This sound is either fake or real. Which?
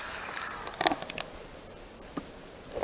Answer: real